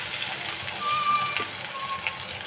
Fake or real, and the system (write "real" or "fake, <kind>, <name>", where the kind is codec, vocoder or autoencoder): real